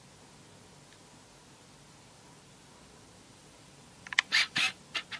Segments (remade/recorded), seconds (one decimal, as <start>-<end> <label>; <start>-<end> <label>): 0.0-3.4 recorded; 3.4-4.8 remade; 4.8-5.2 recorded